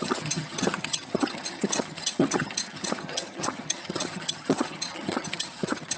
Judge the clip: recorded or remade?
remade